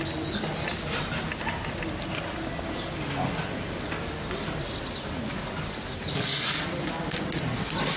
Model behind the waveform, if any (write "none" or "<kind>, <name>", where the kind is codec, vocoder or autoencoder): none